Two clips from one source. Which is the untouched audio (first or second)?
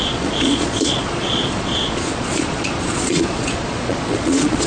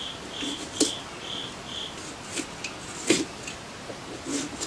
second